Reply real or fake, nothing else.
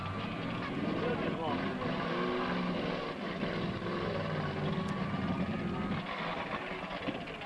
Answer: real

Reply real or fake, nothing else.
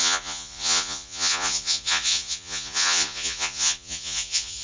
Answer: fake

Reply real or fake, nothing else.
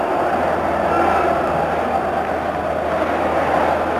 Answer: fake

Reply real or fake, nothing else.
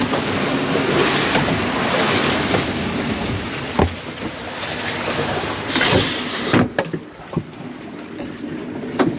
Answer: real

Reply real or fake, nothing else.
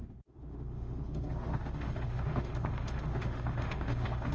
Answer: fake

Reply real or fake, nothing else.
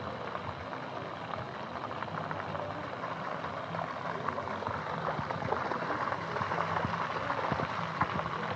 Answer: real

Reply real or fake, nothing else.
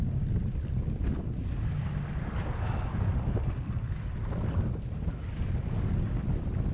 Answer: real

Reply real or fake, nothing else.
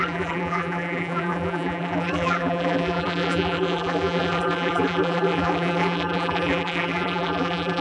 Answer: fake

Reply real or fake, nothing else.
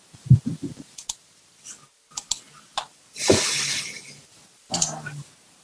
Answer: real